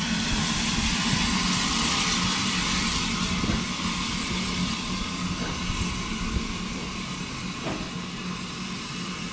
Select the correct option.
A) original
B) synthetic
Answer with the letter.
A